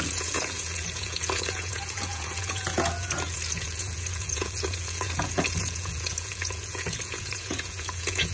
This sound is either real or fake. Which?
fake